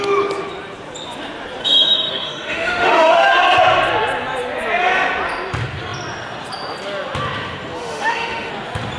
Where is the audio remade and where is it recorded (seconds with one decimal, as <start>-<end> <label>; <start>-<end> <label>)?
0.0-1.6 recorded; 1.6-3.3 remade; 3.3-7.8 recorded; 7.8-8.5 remade; 8.5-9.0 recorded